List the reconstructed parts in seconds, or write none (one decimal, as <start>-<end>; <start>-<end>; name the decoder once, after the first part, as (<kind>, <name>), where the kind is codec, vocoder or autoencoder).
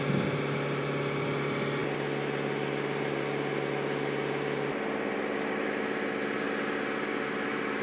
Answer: none